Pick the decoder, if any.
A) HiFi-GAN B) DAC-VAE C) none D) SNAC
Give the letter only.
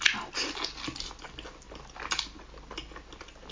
C